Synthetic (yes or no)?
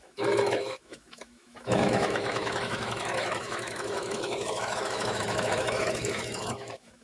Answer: yes